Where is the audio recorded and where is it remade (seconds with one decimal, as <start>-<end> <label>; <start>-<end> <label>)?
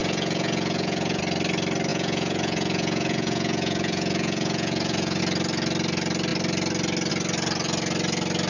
0.0-1.2 remade; 1.2-1.9 recorded; 1.9-5.2 remade; 5.2-8.5 recorded